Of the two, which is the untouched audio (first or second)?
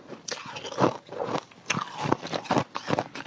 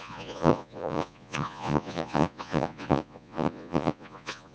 first